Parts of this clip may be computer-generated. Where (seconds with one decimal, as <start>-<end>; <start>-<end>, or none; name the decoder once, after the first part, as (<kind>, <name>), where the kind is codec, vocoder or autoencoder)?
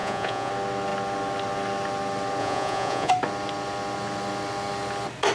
0.0-0.5 (vocoder, Vocos); 2.4-3.1